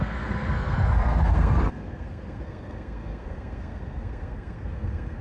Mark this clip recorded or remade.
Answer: remade